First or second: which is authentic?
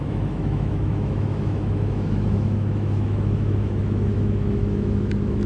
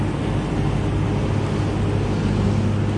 second